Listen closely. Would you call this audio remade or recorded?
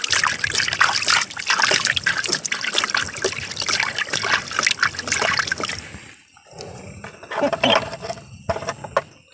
recorded